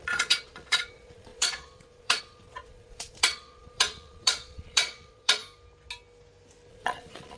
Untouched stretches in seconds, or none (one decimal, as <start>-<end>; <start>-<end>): 5.4-6.7